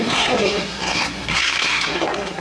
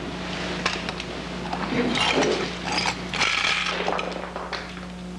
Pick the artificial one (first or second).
first